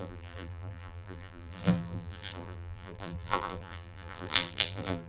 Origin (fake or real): fake